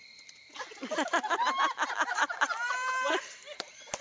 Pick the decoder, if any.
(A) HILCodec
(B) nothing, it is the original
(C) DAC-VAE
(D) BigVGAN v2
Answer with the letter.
B